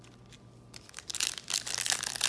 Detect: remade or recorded recorded